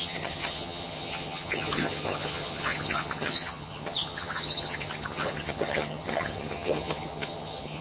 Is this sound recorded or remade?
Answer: remade